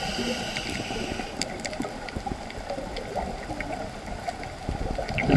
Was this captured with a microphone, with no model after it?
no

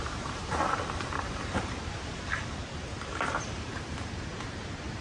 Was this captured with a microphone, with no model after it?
no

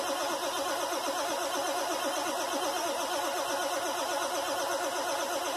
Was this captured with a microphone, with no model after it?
yes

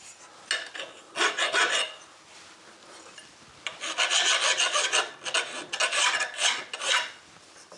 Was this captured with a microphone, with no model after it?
yes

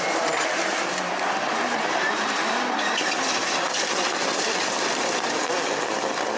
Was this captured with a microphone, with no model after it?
no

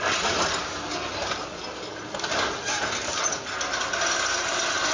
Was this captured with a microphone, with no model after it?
yes